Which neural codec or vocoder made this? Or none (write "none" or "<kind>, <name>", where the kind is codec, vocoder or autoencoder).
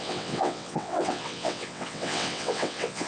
vocoder, WaveNeXt